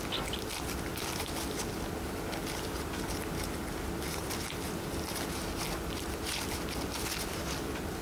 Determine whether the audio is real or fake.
real